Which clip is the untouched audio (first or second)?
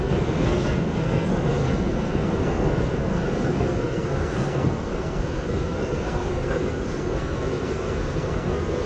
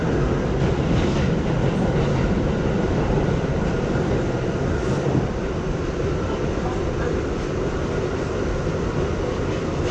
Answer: second